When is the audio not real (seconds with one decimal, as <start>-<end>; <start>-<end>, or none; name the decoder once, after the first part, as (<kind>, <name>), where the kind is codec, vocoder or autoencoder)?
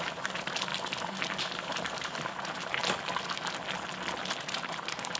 0.0-0.7 (vocoder, BigVGAN v2); 1.4-2.8; 4.4-5.2